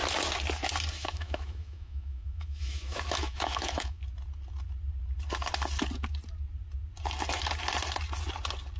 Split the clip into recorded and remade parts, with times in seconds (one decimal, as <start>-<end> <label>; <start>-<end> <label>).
0.0-0.9 recorded; 0.9-4.0 remade; 4.0-8.8 recorded